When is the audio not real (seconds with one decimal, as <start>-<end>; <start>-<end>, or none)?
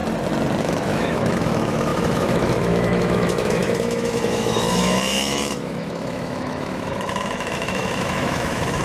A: 0.6-8.8